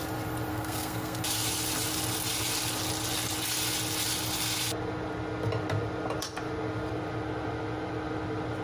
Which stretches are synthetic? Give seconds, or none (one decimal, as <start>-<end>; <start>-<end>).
0.5-1.2